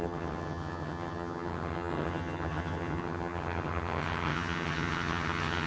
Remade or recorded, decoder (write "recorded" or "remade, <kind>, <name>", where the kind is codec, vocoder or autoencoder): remade, vocoder, HiFi-GAN